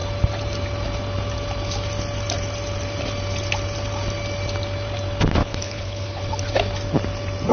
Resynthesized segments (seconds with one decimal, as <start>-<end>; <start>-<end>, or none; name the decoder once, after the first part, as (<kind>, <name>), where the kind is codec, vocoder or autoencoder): 5.4-6.2 (codec, HILCodec)